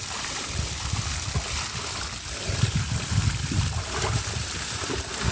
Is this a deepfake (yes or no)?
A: no